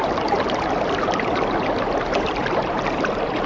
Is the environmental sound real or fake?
real